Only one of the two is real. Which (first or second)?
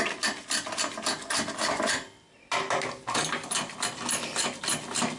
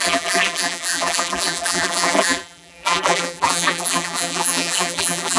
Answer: first